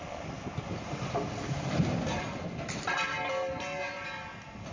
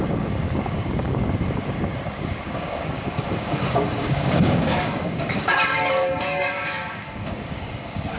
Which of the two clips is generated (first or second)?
second